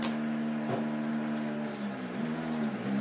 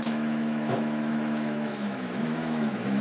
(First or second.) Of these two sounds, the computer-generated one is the second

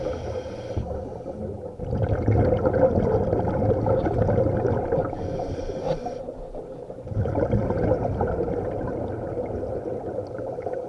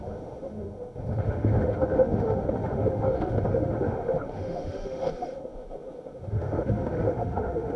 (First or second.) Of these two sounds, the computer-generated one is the second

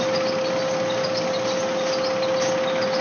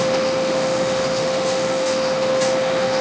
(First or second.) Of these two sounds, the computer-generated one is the second